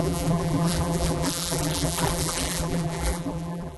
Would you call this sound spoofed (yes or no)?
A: yes